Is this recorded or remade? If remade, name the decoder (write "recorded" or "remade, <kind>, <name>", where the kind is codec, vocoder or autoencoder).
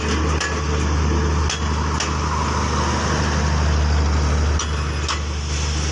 recorded